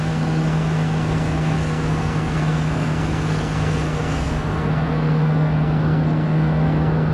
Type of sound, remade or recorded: remade